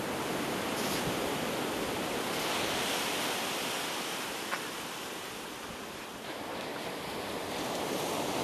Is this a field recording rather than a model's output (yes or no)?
yes